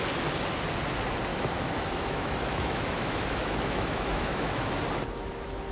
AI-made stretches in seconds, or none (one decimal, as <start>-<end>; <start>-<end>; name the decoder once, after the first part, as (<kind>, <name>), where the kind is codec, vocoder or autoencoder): 1.3-4.7 (autoencoder, DAC-VAE)